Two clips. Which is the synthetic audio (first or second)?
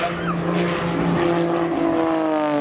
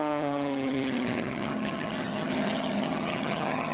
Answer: second